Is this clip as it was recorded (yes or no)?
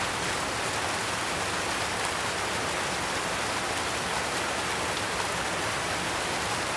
yes